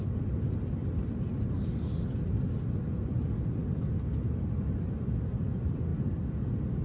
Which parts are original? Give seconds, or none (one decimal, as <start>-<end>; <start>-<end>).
0.0-6.8